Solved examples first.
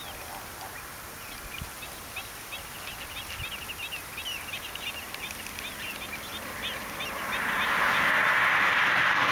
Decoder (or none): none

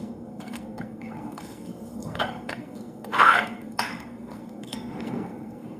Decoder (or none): codec, SNAC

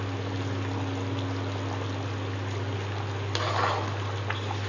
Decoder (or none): none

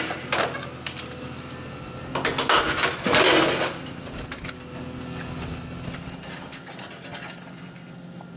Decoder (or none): none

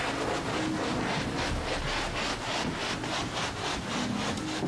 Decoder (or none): none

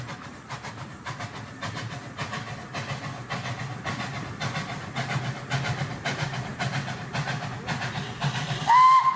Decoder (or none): none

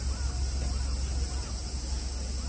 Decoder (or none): none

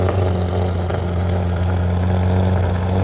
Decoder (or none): none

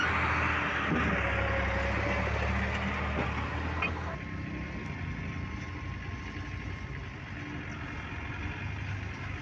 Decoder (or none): none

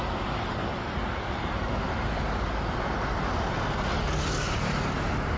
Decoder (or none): none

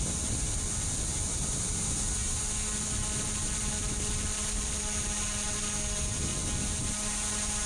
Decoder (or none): none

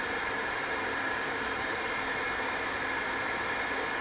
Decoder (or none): none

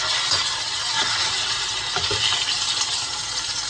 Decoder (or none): none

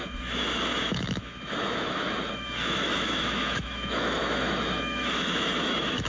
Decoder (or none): autoencoder, DAC-VAE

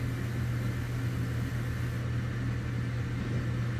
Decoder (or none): none